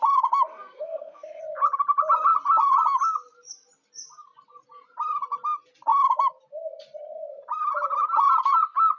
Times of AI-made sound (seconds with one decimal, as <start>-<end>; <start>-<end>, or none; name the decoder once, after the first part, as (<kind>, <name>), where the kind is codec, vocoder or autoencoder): 0.5-1.4 (codec, SNAC)